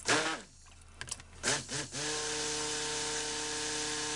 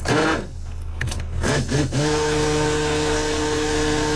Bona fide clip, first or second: first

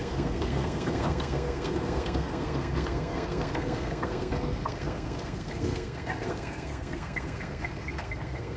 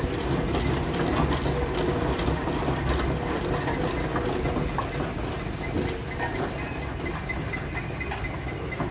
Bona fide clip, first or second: second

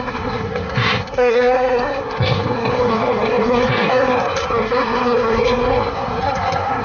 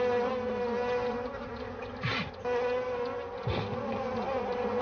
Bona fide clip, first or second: second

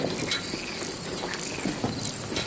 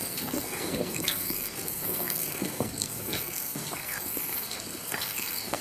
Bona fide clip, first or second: first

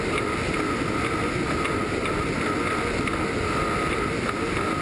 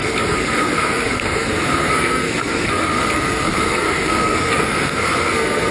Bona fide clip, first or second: first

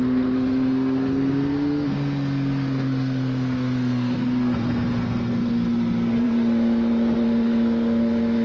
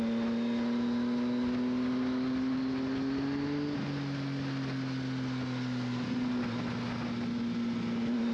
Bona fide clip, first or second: second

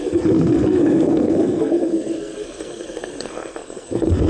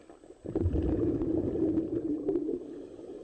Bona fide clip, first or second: second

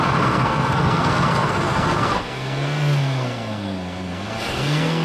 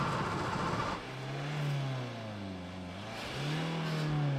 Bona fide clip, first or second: second